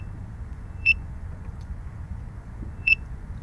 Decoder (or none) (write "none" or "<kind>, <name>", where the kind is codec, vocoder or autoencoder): vocoder, Vocos